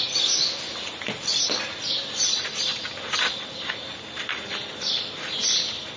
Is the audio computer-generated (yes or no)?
no